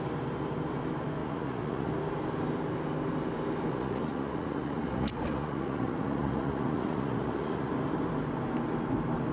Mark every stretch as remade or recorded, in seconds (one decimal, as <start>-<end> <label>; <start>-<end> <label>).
0.0-1.2 recorded; 1.2-1.9 remade; 1.9-3.7 recorded; 3.7-7.7 remade; 7.7-9.3 recorded